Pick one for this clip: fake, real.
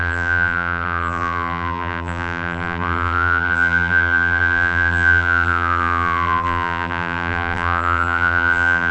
fake